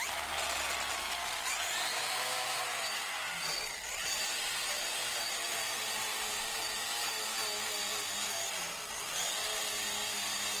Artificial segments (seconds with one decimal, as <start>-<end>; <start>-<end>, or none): 1.9-2.8; 4.0-5.5